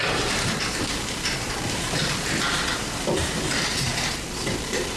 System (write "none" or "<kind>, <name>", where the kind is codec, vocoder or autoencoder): vocoder, BigVGAN v2